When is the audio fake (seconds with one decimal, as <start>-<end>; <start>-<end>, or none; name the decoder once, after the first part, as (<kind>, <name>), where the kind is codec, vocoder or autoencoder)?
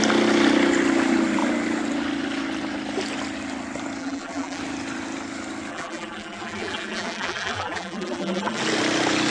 4.0-4.6 (vocoder, BigVGAN v2); 5.7-8.6